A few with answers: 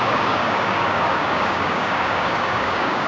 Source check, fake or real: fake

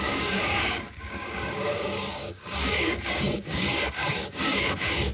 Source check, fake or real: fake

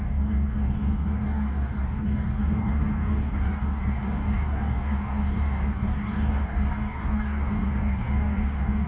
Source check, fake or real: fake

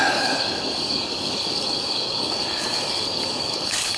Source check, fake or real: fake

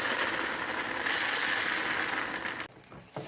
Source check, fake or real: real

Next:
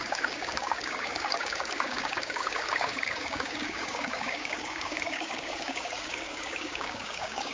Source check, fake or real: fake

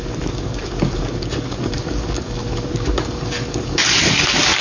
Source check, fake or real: fake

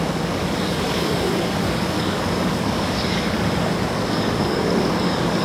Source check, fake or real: fake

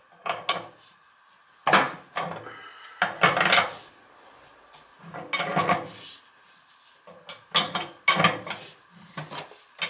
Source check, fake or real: real